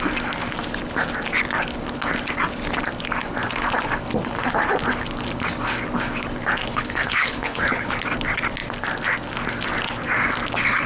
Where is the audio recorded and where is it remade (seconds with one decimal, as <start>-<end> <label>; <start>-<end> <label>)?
0.0-6.6 recorded; 6.6-8.0 remade; 8.0-10.9 recorded